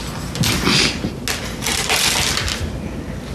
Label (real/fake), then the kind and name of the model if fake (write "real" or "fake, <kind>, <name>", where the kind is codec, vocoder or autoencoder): real